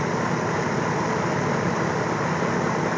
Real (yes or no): yes